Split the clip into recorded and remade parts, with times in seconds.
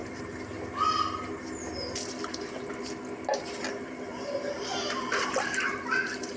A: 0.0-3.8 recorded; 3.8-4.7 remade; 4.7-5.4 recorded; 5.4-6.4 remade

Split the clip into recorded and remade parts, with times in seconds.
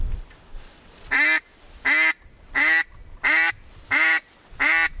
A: 0.0-5.0 recorded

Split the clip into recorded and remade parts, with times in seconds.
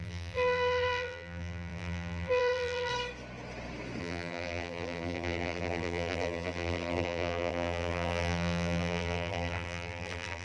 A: 0.0-2.9 remade; 2.9-4.0 recorded; 4.0-10.4 remade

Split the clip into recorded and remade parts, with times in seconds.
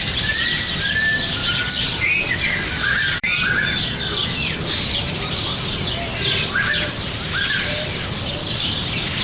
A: 0.0-1.4 remade; 1.4-2.3 recorded; 2.3-4.1 remade; 4.1-4.7 recorded; 4.7-6.1 remade; 6.1-6.7 recorded; 6.7-9.2 remade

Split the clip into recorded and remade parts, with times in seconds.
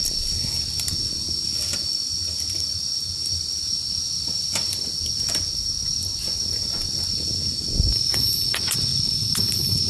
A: 0.0-9.9 recorded